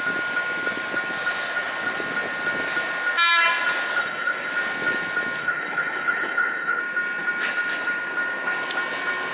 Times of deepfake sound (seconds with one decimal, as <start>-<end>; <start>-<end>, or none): 4.0-4.5; 5.4-6.8